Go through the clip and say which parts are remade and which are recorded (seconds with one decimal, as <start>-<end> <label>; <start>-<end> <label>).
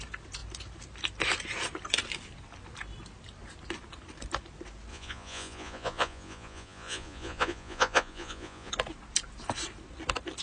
0.0-4.9 recorded; 4.9-8.7 remade; 8.7-10.4 recorded